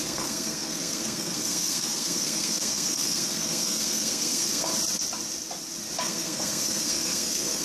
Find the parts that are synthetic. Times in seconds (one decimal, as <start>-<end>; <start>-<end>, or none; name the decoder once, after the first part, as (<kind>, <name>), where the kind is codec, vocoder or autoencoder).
0.0-4.7 (codec, SNAC); 6.0-7.6